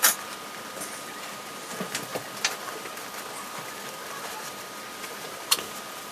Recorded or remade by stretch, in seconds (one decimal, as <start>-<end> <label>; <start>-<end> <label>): 0.0-2.1 recorded; 2.1-6.1 remade